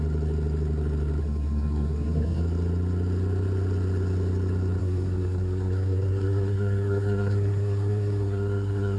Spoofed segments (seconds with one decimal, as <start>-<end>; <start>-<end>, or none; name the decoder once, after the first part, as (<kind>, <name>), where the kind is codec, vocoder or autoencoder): 1.2-2.4 (codec, SNAC); 4.8-9.0